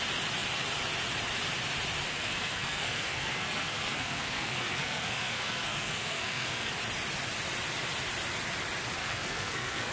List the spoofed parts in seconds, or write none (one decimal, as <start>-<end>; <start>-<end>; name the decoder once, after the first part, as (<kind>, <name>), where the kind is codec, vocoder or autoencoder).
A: 2.1-6.7 (codec, SNAC); 9.0-9.9